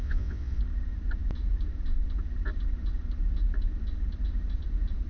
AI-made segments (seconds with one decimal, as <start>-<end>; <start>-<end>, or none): 0.0-0.6